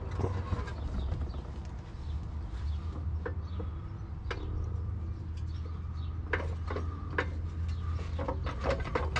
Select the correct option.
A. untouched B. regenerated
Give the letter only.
A